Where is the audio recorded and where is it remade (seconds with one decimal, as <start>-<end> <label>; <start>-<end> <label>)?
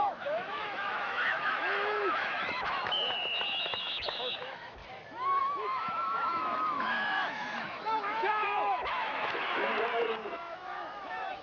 0.0-4.8 remade; 4.8-5.4 recorded; 5.4-9.7 remade; 9.7-10.3 recorded; 10.3-11.4 remade